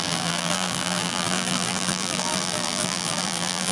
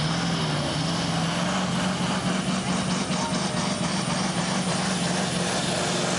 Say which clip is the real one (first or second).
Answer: second